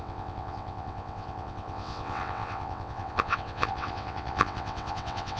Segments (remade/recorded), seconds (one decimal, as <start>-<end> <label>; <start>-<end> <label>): 0.0-5.4 remade